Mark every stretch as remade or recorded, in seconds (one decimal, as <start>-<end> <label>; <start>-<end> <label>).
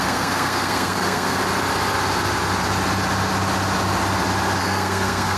0.0-1.4 remade; 1.4-4.6 recorded; 4.6-5.4 remade